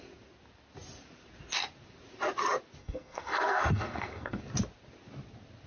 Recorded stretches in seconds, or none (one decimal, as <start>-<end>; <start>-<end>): 0.0-2.8; 4.4-5.7